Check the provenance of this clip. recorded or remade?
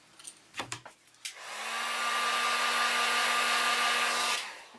recorded